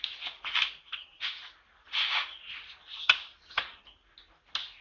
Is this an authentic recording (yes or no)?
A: yes